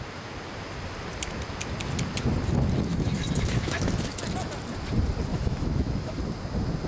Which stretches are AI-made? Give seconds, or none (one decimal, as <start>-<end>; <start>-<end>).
2.9-3.9; 5.3-6.2